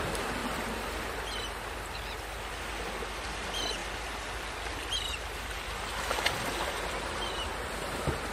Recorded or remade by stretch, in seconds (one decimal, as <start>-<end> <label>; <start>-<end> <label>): 0.0-8.3 recorded